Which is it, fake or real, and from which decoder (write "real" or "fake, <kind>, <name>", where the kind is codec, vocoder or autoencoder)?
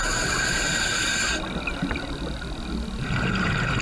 real